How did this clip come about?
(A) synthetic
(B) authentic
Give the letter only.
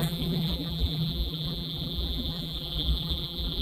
A